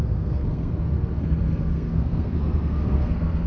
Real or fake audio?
fake